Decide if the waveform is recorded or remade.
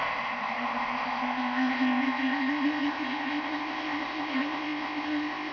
remade